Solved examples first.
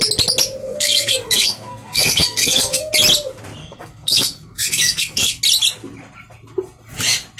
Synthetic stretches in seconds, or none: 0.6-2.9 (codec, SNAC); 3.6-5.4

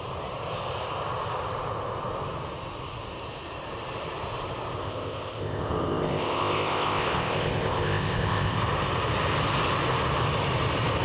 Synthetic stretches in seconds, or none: 4.8-8.6 (codec, ZipCodec)

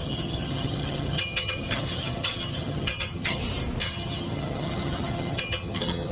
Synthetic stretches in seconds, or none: 0.0-3.4 (vocoder, HiFi-GAN); 3.8-6.1

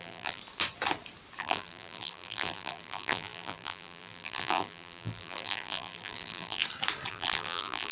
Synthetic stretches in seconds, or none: 0.0-0.4 (vocoder, BigVGAN v2); 1.4-6.6; 7.1-7.9

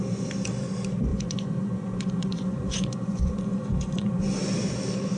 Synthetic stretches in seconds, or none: 1.1-4.2 (vocoder, Vocos)

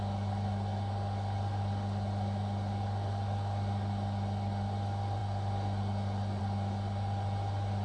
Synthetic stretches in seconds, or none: none

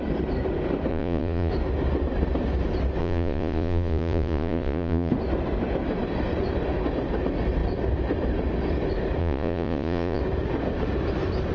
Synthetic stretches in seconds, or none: 0.9-1.5 (vocoder, Vocos); 3.0-5.1; 9.2-10.2